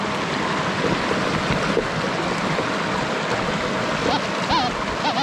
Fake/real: real